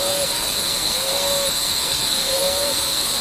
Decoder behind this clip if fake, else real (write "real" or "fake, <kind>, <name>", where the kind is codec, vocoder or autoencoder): fake, codec, SNAC